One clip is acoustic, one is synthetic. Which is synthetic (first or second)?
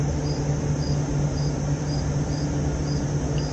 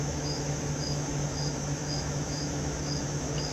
second